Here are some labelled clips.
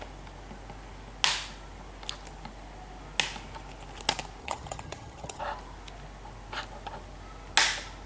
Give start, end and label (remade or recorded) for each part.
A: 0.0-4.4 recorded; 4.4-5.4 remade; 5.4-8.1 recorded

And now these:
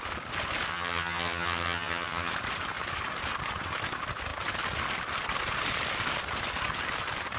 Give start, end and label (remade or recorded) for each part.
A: 0.0-0.7 recorded; 0.7-2.3 remade; 2.3-7.4 recorded

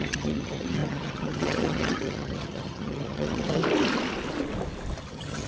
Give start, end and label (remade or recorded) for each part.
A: 0.0-3.6 remade; 3.6-5.0 recorded; 5.0-5.5 remade

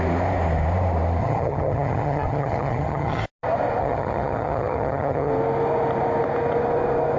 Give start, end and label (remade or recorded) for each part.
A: 0.0-1.2 recorded; 1.2-3.2 remade; 3.2-3.8 recorded; 3.8-5.3 remade; 5.3-7.2 recorded

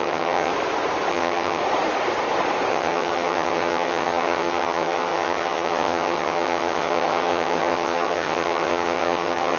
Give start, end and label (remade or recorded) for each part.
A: 0.0-0.5 remade; 0.5-1.1 recorded; 1.1-1.6 remade; 1.6-2.7 recorded; 2.7-9.6 remade

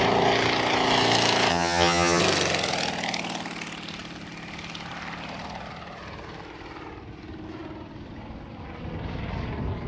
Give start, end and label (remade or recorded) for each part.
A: 0.0-1.5 recorded; 1.5-2.2 remade; 2.2-9.9 recorded

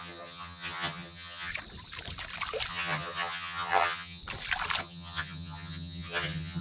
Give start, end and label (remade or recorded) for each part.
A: 0.0-1.5 remade; 1.5-2.7 recorded; 2.7-4.2 remade; 4.2-4.8 recorded; 4.8-6.6 remade

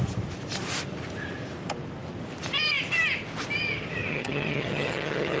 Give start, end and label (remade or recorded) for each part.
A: 0.0-4.1 recorded; 4.1-5.4 remade